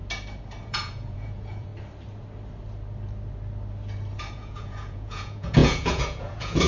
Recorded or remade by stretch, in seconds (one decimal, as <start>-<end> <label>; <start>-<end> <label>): 0.0-0.6 recorded; 0.6-1.7 remade; 1.7-4.2 recorded; 4.2-6.7 remade